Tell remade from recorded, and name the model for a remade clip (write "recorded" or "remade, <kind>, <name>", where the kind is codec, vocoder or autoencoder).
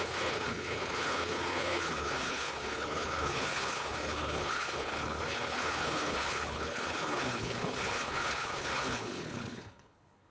remade, codec, HILCodec